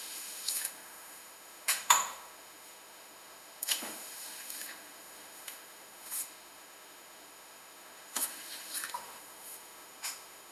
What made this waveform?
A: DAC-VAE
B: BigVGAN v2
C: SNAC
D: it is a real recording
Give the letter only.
A